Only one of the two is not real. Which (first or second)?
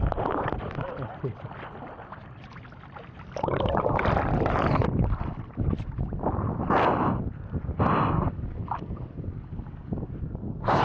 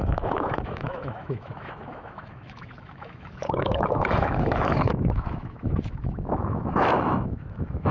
second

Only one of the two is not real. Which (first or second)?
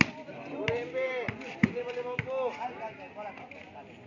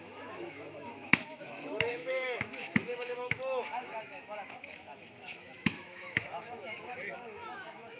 second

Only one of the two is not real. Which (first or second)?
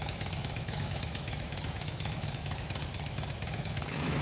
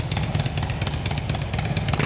first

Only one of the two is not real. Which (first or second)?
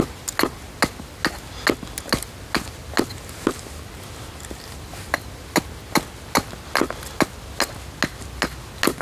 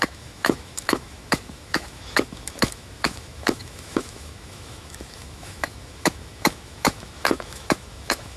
second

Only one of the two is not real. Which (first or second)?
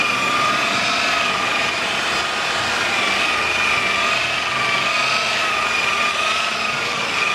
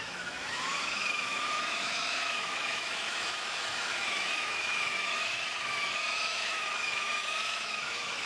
second